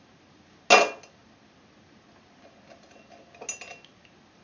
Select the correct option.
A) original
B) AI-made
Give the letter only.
A